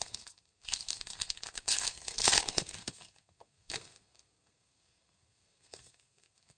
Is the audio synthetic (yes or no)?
yes